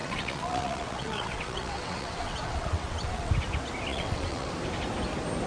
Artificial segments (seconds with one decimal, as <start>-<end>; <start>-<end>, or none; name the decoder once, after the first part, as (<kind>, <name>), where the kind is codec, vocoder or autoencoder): 0.0-3.3 (vocoder, WaveNeXt); 3.9-4.5